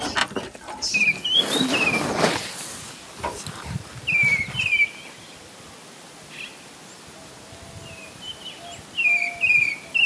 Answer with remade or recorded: recorded